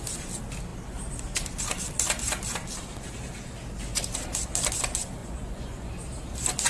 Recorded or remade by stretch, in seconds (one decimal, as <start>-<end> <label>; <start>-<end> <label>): 0.0-5.2 recorded; 5.2-5.9 remade; 5.9-6.7 recorded